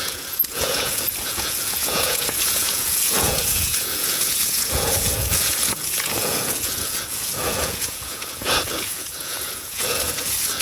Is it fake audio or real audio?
fake